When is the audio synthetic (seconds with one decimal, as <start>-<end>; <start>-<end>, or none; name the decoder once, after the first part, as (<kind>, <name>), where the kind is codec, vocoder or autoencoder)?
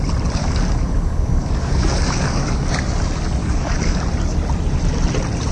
0.4-2.7 (codec, DAC); 3.4-4.0